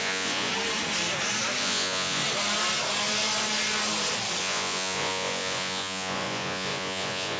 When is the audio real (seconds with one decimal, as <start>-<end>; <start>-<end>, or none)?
0.5-1.6; 2.2-4.4